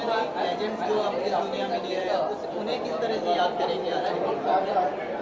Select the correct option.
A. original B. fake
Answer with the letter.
B